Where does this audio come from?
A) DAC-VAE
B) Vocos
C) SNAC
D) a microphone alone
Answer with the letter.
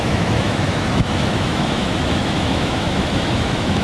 A